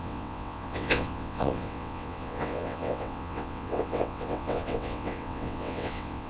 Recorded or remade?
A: remade